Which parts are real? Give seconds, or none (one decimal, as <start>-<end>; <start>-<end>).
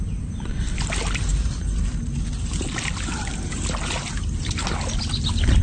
0.0-1.3; 4.7-5.6